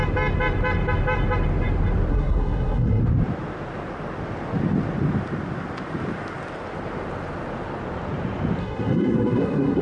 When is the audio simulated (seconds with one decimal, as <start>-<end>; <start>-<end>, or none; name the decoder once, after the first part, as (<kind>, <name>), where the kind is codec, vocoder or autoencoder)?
2.1-3.0 (codec, SNAC); 8.6-9.8